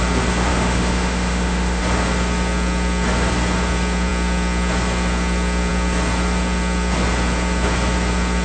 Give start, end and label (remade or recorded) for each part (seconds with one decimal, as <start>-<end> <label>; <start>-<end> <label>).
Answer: 0.0-0.5 recorded; 0.5-1.8 remade; 1.8-8.4 recorded